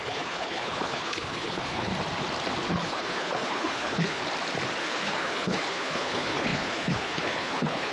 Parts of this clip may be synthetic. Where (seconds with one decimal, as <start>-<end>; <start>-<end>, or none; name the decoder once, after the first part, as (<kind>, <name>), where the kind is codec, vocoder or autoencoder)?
0.0-1.9 (codec, HILCodec); 2.7-4.2; 4.8-7.9